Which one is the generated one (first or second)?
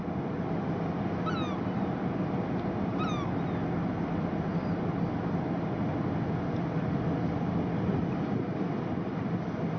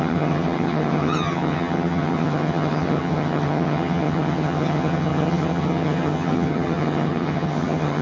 second